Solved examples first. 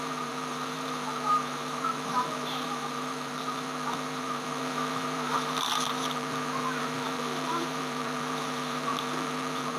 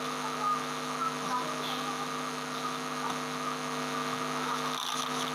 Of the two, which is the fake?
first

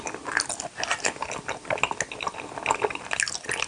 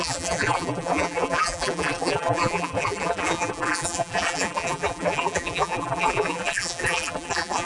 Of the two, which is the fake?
second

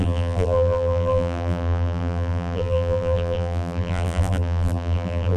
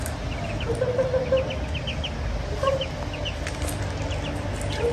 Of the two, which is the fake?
first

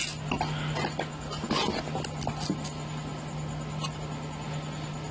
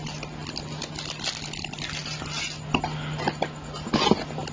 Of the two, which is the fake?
second